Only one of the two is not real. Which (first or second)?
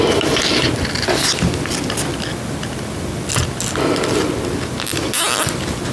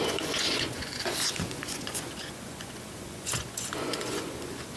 second